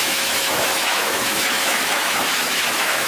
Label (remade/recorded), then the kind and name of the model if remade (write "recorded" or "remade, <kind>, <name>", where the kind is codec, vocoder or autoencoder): remade, autoencoder, DAC-VAE